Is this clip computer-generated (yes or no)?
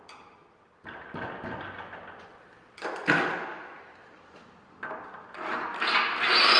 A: no